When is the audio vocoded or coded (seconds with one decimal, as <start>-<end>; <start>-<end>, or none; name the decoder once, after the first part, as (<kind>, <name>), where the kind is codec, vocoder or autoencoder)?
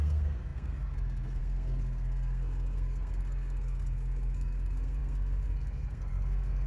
0.0-6.7 (codec, SNAC)